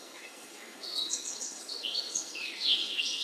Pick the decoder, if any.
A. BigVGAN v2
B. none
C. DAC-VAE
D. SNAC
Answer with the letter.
D